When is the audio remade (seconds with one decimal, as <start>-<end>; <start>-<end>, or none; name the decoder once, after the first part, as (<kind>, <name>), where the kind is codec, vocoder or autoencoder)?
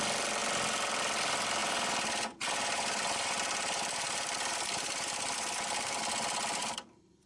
1.6-6.0 (vocoder, BigVGAN v2); 6.6-7.3